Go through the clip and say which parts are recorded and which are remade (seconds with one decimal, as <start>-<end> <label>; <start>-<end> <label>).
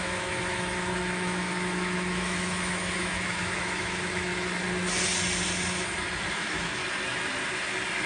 0.0-4.3 remade; 4.3-6.3 recorded; 6.3-6.8 remade; 6.8-8.1 recorded